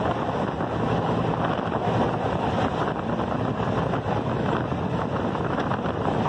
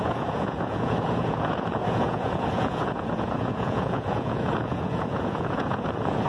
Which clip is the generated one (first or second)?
second